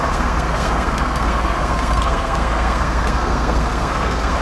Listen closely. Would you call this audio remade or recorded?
remade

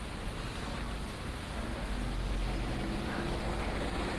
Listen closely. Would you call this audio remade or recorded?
recorded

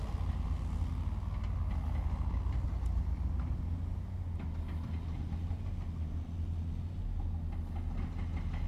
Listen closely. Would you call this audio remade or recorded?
recorded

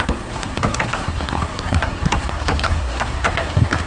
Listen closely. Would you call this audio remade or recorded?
remade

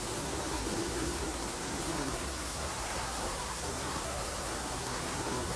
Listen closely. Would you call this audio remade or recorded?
remade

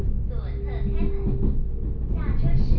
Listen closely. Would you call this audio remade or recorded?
recorded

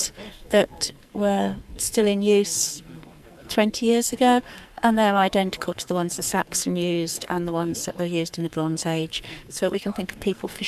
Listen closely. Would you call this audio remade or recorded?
remade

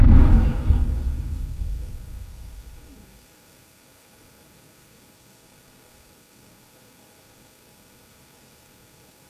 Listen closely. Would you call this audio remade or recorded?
remade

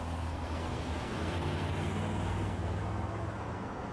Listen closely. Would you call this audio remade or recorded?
remade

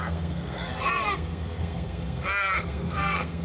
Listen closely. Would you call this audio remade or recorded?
remade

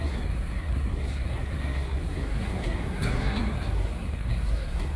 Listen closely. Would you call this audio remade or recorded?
remade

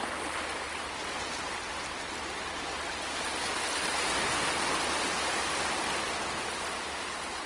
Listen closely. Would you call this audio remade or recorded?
recorded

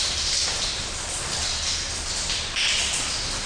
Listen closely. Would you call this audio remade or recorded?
recorded